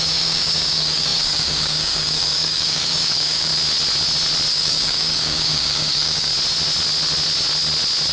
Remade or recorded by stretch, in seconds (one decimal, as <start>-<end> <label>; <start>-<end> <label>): 0.0-3.5 remade; 3.5-4.5 recorded; 4.5-6.3 remade; 6.3-8.1 recorded